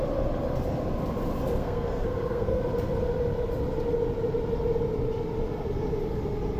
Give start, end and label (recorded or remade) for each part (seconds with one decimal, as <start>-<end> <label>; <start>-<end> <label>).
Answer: 0.0-1.6 recorded; 1.6-2.6 remade; 2.6-6.6 recorded